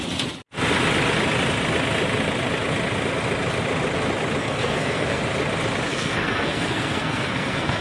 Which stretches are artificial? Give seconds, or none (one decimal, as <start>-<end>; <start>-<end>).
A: 4.4-5.2; 5.9-7.8